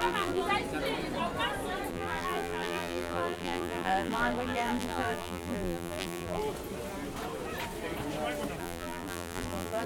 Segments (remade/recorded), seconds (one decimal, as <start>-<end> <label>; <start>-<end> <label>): 0.0-0.4 remade; 0.4-1.9 recorded; 1.9-6.4 remade; 6.4-8.6 recorded; 8.6-9.9 remade

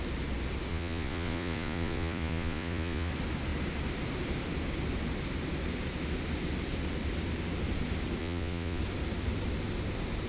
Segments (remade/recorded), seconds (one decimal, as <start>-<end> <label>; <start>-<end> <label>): 0.0-0.7 recorded; 0.7-3.1 remade; 3.1-8.2 recorded; 8.2-8.8 remade; 8.8-10.3 recorded

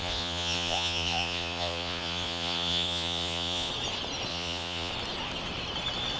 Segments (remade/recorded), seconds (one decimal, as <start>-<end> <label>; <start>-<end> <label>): 0.0-3.7 remade; 3.7-4.3 recorded; 4.3-4.9 remade; 4.9-6.2 recorded

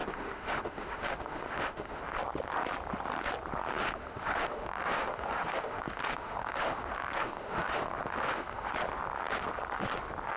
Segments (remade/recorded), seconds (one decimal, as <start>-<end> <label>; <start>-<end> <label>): 0.0-2.0 remade; 2.0-3.8 recorded; 3.8-8.7 remade; 8.7-10.4 recorded

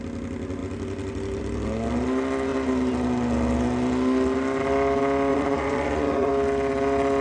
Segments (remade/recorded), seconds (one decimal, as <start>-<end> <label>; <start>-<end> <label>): 0.0-5.3 recorded; 5.3-6.3 remade; 6.3-7.2 recorded

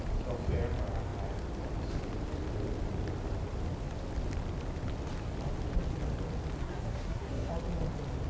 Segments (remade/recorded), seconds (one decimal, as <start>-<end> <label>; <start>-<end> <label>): 0.0-6.6 recorded; 6.6-7.5 remade; 7.5-8.3 recorded

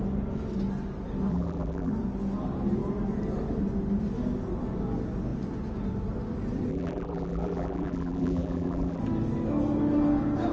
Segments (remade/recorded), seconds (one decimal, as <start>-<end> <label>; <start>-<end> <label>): 0.0-1.3 recorded; 1.3-1.9 remade; 1.9-6.7 recorded; 6.7-9.0 remade; 9.0-10.5 recorded